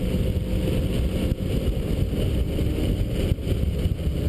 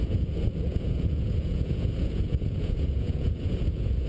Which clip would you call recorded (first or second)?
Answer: first